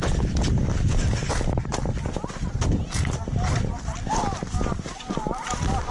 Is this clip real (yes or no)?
yes